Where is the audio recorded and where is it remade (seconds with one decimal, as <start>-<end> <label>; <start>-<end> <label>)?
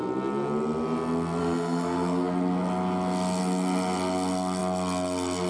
0.0-1.4 recorded; 1.4-2.3 remade; 2.3-5.5 recorded